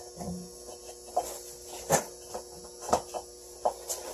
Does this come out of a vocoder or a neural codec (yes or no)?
yes